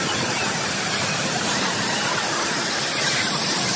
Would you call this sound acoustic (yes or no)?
no